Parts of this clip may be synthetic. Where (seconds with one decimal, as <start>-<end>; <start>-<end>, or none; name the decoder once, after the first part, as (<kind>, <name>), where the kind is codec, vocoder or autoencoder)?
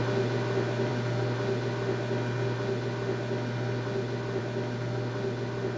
none